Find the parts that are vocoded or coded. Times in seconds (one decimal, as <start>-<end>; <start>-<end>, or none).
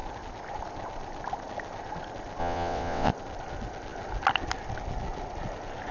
2.4-3.1